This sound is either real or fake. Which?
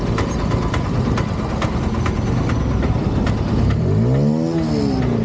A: real